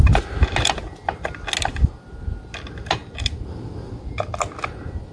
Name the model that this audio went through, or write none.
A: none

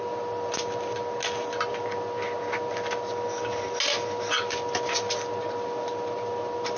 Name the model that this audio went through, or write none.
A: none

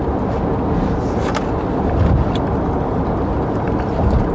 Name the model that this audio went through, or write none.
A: none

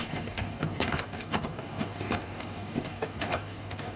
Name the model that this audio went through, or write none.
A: codec, DAC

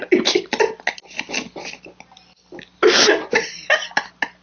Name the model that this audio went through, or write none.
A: none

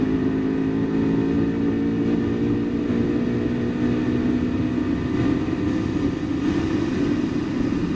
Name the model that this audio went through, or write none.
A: none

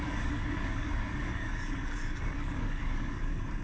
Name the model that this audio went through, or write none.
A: codec, DAC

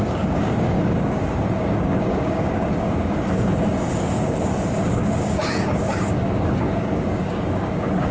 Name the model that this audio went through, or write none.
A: codec, DAC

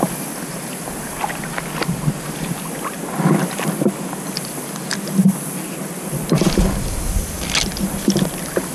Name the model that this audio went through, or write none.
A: none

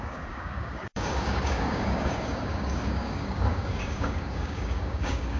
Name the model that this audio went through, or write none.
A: codec, DAC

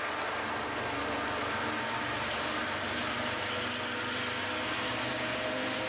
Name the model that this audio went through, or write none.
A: none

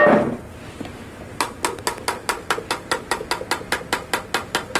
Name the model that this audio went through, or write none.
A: none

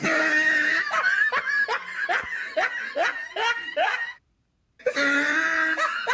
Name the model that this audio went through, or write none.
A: none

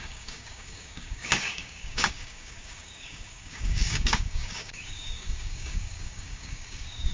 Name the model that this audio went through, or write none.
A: codec, DAC